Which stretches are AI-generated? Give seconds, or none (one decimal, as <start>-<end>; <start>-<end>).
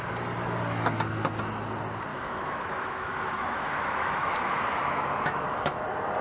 2.1-5.8